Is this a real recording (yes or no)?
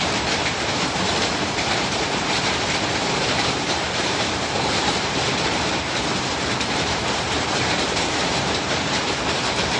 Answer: no